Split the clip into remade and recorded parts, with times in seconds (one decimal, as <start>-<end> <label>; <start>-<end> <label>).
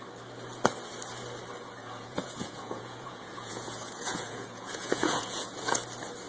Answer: 0.0-1.8 recorded; 1.8-5.6 remade; 5.6-6.3 recorded